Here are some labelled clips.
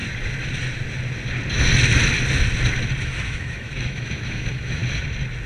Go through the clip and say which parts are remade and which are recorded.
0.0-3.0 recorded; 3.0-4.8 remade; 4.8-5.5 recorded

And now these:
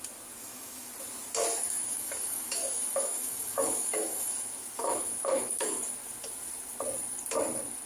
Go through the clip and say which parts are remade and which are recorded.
0.0-0.4 recorded; 0.4-0.9 remade; 0.9-1.5 recorded; 1.5-5.8 remade; 5.8-7.9 recorded

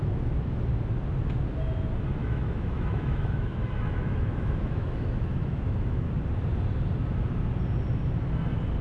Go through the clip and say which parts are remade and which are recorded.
0.0-2.2 recorded; 2.2-6.1 remade; 6.1-8.8 recorded

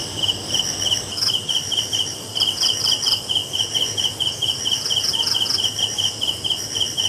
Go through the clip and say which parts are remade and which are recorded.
0.0-7.1 recorded

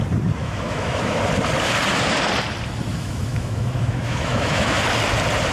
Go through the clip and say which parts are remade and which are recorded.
0.0-0.4 recorded; 0.4-1.2 remade; 1.2-2.9 recorded; 2.9-4.8 remade; 4.8-5.5 recorded